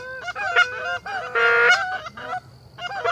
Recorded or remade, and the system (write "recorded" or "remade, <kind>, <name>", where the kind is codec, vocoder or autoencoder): recorded